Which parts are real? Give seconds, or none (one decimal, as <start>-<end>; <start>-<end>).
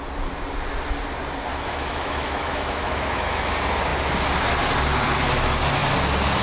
0.0-1.5; 3.5-6.4